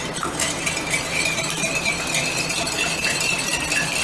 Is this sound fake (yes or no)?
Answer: no